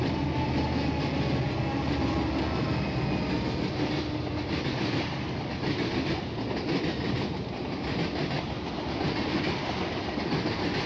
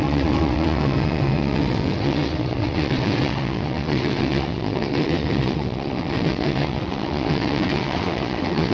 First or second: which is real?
first